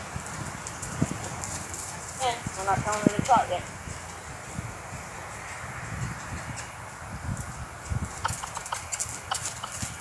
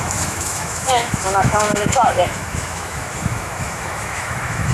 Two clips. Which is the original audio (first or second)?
first